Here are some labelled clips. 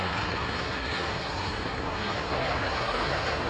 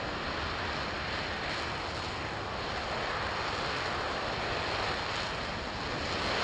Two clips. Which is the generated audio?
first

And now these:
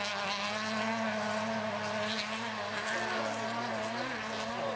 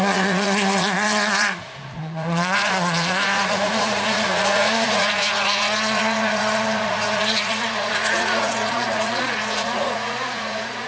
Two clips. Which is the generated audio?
second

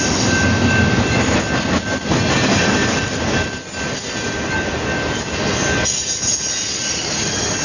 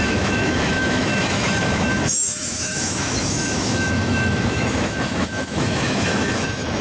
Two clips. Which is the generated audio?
second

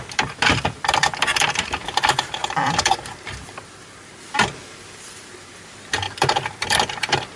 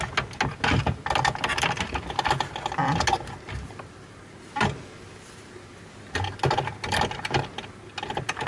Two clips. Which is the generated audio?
first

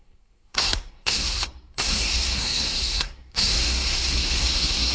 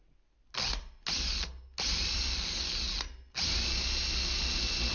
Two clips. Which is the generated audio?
first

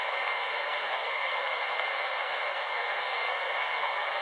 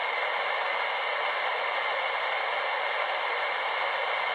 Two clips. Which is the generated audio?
first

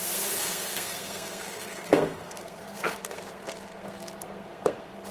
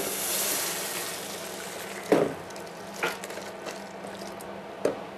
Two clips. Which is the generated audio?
first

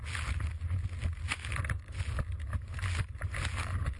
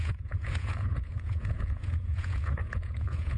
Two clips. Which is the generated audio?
second